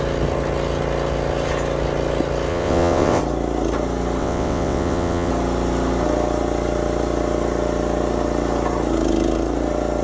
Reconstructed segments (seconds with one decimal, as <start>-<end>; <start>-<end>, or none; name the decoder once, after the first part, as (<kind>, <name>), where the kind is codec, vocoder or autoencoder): 2.5-3.2 (vocoder, WaveNeXt); 4.2-5.3